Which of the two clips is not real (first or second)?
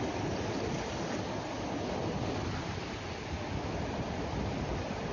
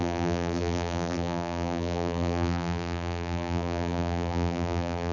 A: second